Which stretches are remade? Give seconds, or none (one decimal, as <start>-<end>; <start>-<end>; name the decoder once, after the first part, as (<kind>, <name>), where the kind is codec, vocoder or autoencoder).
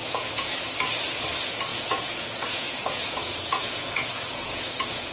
0.0-0.5 (vocoder, Vocos); 1.7-5.1